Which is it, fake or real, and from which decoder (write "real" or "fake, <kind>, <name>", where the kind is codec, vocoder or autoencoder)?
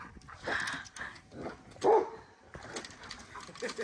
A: real